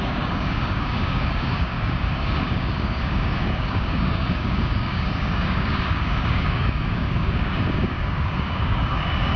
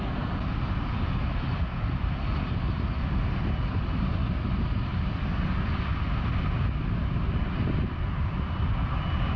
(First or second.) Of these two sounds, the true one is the second